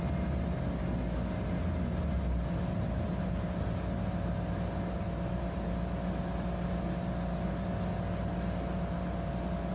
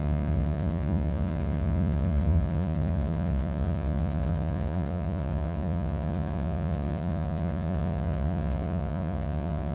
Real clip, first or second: first